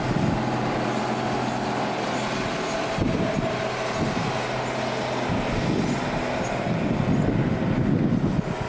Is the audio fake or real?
real